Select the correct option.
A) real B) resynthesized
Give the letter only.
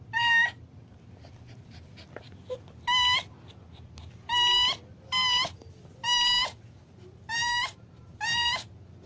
A